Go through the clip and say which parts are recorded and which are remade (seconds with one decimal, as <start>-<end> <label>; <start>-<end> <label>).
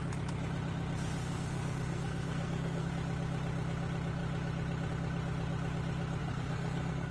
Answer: 0.0-1.2 recorded; 1.2-2.9 remade; 2.9-6.2 recorded; 6.2-7.1 remade